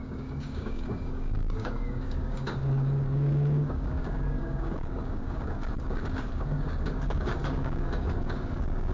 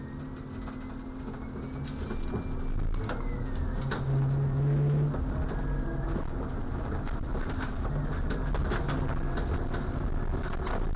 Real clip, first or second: second